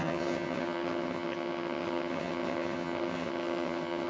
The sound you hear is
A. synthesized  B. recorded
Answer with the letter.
A